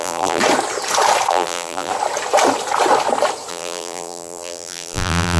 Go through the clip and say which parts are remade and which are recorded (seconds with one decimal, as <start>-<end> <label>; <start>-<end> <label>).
0.0-0.4 remade; 0.4-1.3 recorded; 1.3-1.9 remade; 1.9-3.5 recorded; 3.5-5.4 remade